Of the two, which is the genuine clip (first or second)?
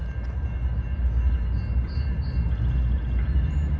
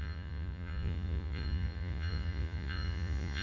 first